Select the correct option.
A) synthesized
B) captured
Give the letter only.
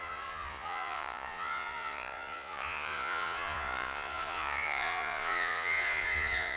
A